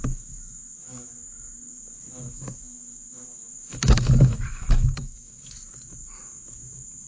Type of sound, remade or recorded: remade